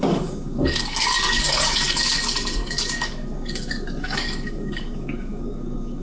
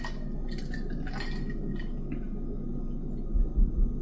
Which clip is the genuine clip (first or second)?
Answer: second